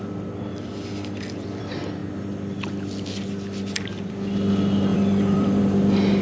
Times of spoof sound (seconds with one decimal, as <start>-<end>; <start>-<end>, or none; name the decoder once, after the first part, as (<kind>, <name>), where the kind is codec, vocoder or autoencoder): 0.5-1.6 (vocoder, BigVGAN v2); 4.9-5.6

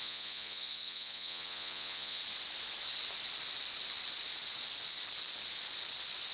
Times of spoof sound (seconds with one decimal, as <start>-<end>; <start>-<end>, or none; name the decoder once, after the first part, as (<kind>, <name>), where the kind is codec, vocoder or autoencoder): 0.0-2.2 (vocoder, Vocos)

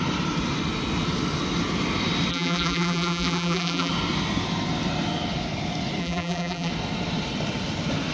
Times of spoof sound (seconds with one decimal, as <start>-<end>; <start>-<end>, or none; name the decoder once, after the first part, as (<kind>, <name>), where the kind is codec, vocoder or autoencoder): 2.3-3.9 (vocoder, BigVGAN v2); 6.0-6.7